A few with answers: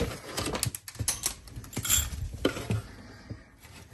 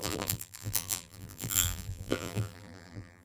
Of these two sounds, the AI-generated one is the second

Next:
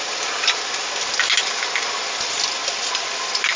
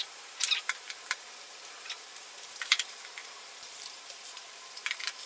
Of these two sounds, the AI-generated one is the second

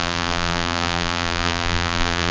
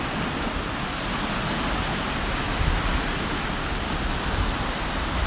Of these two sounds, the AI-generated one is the first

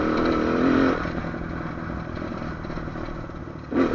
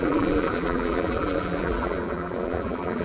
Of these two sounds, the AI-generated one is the second